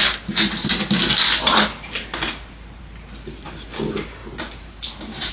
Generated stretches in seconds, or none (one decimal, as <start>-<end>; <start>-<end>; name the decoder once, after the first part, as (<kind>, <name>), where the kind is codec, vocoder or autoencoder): none